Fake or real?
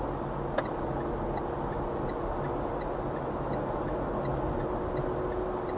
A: real